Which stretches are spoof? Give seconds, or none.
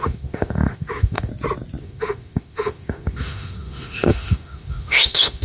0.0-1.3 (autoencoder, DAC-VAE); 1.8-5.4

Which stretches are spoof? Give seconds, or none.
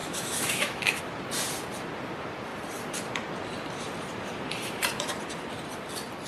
0.0-1.0 (autoencoder, DAC-VAE)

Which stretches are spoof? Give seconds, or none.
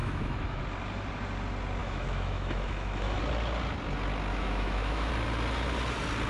0.0-0.6 (autoencoder, DAC-VAE); 1.8-3.2; 4.3-5.1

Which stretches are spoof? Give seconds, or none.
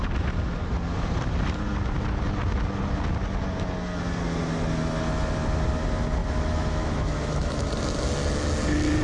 6.2-7.7 (autoencoder, DAC-VAE)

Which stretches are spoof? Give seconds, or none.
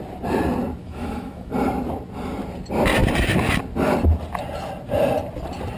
0.8-1.5 (autoencoder, DAC-VAE)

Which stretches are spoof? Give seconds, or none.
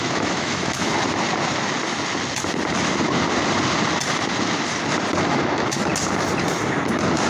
0.0-0.9 (autoencoder, DAC-VAE); 5.3-5.9